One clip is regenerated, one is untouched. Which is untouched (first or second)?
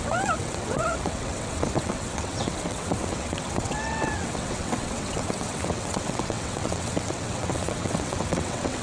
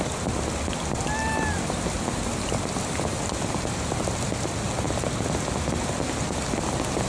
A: second